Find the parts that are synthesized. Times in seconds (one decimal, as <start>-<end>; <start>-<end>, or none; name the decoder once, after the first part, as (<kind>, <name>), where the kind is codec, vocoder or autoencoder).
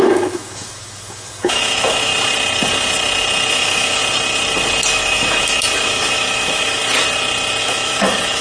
0.0-2.1 (autoencoder, DAC-VAE); 3.5-4.0; 4.9-6.8; 7.6-8.4